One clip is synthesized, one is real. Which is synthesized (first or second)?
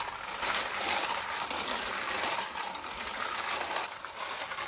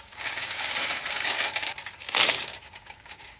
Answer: second